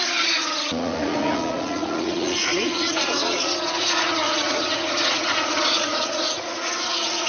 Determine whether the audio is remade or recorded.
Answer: remade